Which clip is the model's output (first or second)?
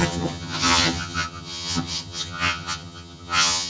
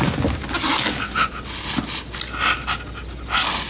first